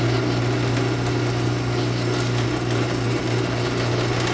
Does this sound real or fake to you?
real